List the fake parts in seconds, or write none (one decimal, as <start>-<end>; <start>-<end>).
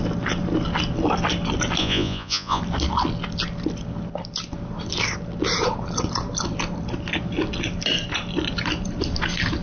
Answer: 1.8-2.6